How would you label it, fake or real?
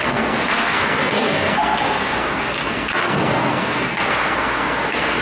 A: fake